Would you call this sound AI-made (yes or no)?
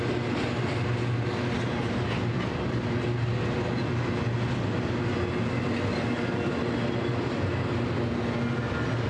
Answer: no